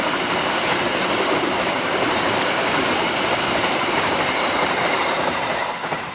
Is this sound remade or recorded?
remade